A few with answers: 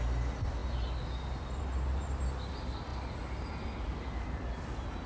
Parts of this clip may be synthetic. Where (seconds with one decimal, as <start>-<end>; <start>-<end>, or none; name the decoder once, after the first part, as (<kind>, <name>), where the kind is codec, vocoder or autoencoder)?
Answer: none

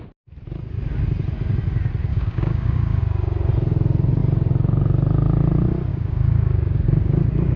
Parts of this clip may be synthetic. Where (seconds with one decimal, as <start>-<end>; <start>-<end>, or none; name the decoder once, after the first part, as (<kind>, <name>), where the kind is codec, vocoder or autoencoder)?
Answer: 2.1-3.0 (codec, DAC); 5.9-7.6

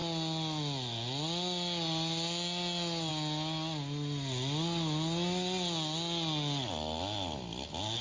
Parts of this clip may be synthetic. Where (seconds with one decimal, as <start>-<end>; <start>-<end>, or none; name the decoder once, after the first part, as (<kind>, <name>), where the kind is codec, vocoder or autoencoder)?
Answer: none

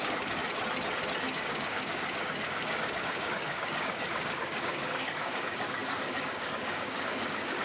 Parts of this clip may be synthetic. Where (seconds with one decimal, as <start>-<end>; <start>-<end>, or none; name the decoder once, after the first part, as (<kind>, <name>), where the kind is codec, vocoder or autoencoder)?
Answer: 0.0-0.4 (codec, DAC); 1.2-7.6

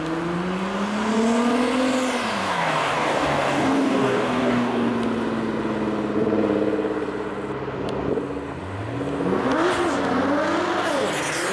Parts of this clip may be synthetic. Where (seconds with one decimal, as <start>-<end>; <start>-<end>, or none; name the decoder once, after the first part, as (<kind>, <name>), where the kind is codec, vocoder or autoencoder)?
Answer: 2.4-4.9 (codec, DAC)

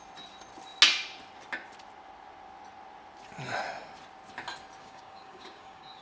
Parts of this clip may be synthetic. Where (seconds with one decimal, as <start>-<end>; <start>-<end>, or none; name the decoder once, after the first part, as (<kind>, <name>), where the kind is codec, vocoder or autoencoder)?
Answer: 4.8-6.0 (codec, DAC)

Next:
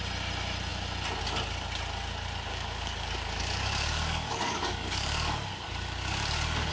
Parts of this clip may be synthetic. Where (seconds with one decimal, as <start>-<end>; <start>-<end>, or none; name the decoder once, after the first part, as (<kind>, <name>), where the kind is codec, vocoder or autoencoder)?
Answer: 2.5-6.7 (codec, DAC)